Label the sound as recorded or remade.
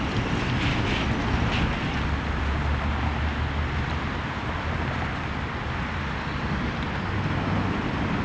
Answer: recorded